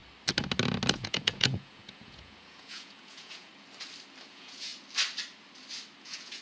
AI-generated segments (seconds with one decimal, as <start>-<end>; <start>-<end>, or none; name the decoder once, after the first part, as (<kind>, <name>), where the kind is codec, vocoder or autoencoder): 0.9-3.5 (vocoder, Vocos); 4.3-4.7; 6.0-6.4